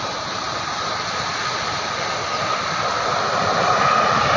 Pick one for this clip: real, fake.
real